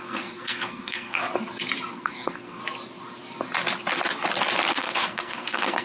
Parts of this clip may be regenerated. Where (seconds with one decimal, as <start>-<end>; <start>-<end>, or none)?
0.0-1.2; 1.9-2.6; 4.7-5.8